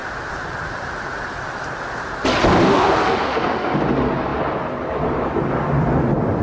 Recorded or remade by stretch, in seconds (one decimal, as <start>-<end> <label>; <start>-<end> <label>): 0.0-2.6 recorded; 2.6-3.8 remade; 3.8-6.4 recorded